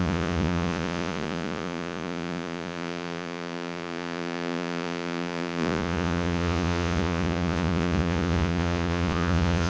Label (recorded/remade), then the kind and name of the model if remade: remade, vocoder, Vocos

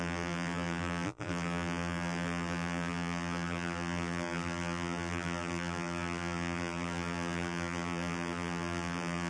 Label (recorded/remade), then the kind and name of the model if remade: remade, vocoder, BigVGAN v2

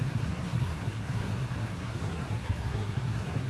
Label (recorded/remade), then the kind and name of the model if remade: remade, codec, SNAC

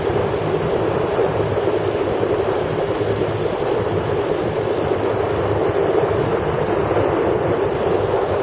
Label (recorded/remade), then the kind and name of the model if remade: recorded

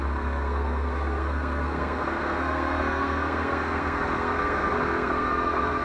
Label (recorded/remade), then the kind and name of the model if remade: remade, codec, SNAC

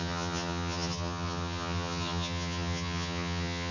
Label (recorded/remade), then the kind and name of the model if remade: remade, vocoder, HiFi-GAN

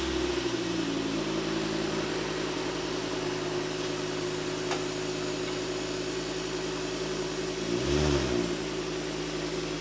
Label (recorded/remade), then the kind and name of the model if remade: recorded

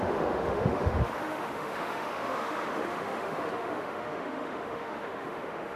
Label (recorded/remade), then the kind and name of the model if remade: remade, autoencoder, DAC-VAE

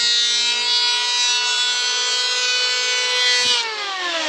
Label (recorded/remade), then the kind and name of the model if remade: recorded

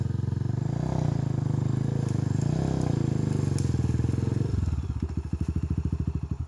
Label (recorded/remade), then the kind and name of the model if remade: recorded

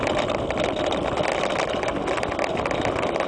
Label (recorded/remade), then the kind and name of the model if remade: recorded